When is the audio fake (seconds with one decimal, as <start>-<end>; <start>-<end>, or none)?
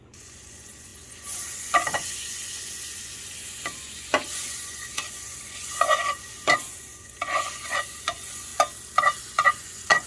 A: 0.0-8.5; 9.2-10.1